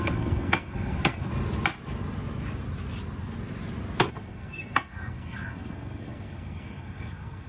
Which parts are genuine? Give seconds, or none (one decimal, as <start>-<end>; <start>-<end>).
1.3-4.1